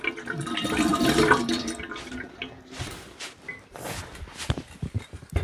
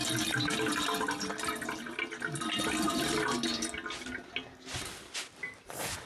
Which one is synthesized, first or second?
first